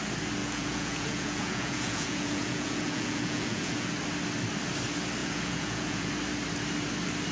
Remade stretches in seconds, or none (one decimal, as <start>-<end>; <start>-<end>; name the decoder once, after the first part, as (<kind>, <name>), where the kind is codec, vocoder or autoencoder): 0.4-3.9 (vocoder, Vocos); 5.2-6.1